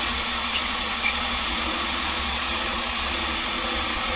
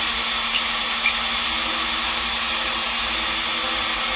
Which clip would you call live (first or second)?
second